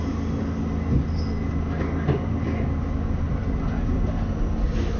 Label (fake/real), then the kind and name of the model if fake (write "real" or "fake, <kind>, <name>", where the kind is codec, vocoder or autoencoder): real